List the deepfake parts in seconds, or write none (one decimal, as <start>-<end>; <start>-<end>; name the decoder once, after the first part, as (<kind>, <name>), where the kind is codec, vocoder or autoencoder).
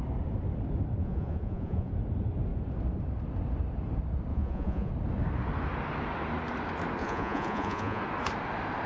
1.0-1.9 (vocoder, Vocos); 4.3-4.9; 7.0-8.0